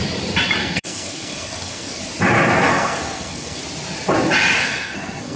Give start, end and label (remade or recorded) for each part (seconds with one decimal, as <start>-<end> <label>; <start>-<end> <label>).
0.0-0.6 recorded; 0.6-2.0 remade; 2.0-2.7 recorded; 2.7-3.6 remade; 3.6-4.6 recorded; 4.6-5.4 remade